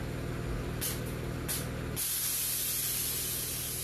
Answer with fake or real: real